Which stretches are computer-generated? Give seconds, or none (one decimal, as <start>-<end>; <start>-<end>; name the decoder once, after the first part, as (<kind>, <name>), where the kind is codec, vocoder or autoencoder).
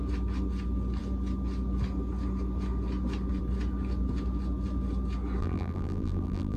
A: 5.4-6.6 (vocoder, BigVGAN v2)